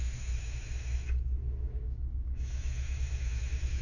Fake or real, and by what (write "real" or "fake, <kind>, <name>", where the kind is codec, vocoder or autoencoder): fake, autoencoder, DAC-VAE